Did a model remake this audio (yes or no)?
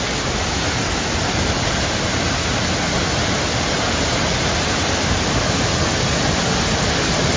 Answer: no